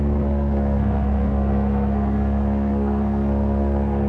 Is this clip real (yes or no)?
no